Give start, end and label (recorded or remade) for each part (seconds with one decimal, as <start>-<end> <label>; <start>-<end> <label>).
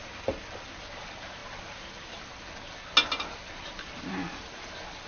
0.0-5.1 recorded